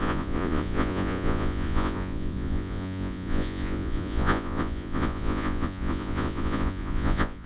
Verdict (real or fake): fake